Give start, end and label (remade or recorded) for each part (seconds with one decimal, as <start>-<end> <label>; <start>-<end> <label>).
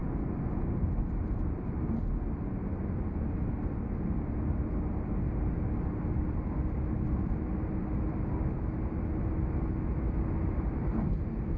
0.0-11.6 recorded